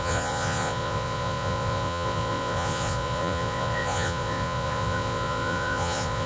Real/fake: fake